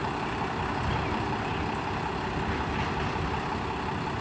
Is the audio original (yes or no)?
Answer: yes